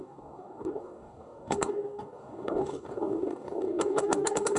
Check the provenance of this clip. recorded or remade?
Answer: remade